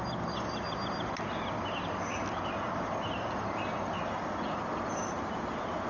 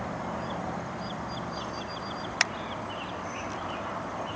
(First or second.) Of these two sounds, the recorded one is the first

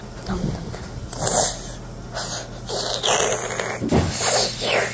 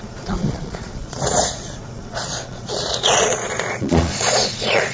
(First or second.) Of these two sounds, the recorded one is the first